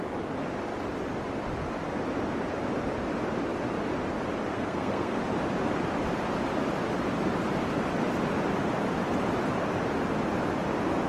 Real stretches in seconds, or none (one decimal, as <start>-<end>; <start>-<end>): 0.0-4.5; 5.2-11.1